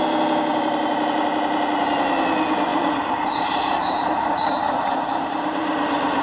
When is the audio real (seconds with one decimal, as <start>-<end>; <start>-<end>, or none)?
0.0-0.5; 1.1-2.7